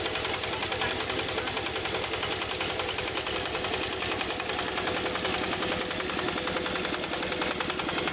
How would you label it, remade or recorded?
recorded